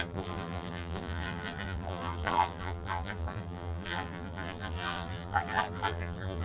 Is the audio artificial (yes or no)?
yes